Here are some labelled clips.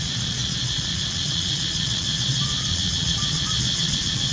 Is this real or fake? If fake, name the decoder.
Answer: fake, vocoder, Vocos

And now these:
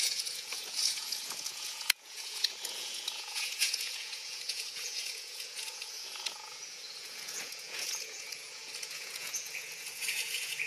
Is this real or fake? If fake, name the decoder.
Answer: fake, vocoder, Vocos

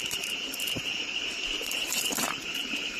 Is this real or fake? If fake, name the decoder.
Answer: fake, vocoder, BigVGAN v2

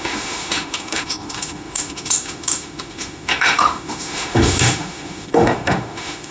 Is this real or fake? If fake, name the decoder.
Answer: fake, autoencoder, DAC-VAE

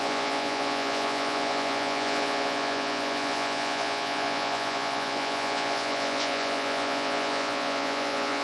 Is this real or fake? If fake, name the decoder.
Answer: fake, vocoder, Vocos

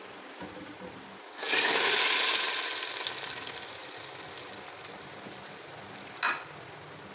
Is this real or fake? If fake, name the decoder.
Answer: real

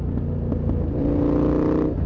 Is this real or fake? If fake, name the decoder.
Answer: real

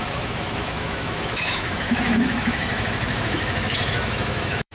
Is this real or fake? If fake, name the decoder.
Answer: fake, autoencoder, DAC-VAE